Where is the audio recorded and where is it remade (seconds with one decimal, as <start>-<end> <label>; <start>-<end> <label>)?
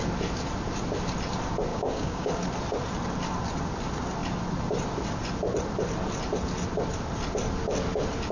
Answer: 0.0-1.7 recorded; 1.7-2.3 remade; 2.3-8.3 recorded